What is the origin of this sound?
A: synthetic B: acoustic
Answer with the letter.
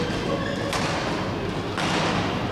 B